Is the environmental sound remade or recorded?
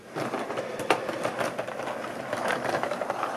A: recorded